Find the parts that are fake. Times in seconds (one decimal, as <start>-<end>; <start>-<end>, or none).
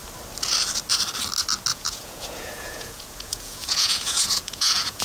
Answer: 1.7-5.0